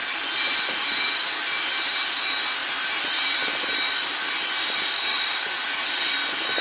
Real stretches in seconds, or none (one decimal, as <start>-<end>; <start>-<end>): 0.0-5.1; 6.1-6.6

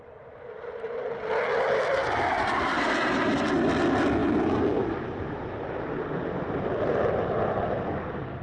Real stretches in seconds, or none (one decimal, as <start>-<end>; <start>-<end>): 0.0-8.4

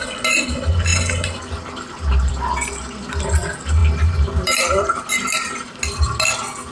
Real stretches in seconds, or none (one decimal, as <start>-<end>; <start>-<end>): 0.0-0.9; 2.3-3.8; 5.5-6.7

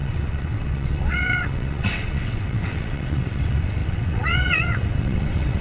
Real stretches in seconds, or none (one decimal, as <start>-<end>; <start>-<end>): none

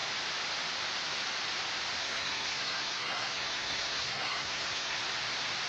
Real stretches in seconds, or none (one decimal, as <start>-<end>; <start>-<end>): 0.0-2.0; 5.0-5.7